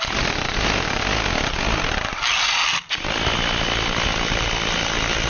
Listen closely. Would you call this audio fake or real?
real